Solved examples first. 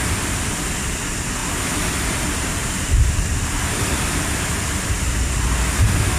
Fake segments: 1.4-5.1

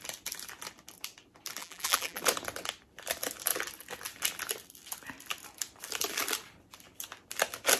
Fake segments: 1.6-2.2

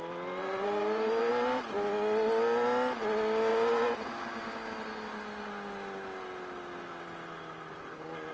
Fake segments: 0.4-1.3; 3.5-4.1

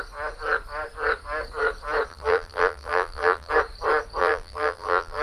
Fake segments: 2.1-3.5; 4.2-5.2

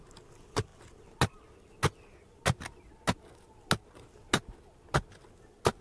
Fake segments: none

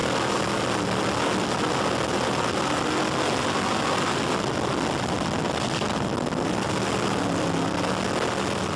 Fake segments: none

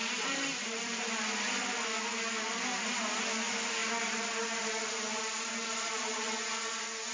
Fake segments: 0.0-1.2; 3.8-6.5

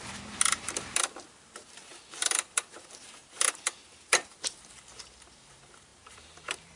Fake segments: 0.0-6.8